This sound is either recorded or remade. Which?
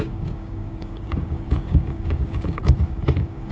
remade